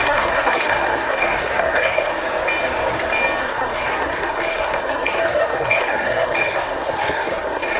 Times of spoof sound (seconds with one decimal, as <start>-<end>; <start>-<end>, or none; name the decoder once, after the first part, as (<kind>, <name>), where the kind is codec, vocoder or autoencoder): 0.0-2.1 (codec, SNAC); 3.4-7.8